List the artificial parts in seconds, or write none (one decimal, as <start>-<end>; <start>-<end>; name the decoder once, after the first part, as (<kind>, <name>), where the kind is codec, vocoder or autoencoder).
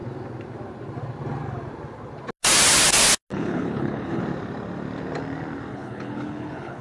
3.3-4.2 (codec, HILCodec); 5.7-6.8